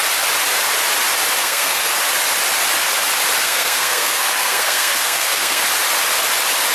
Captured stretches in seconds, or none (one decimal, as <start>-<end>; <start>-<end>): 0.0-1.4; 1.9-3.4; 5.6-6.7